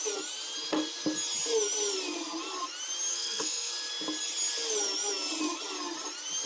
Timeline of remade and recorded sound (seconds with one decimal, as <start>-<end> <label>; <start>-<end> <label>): 0.0-3.1 recorded; 3.1-3.7 remade; 3.7-6.5 recorded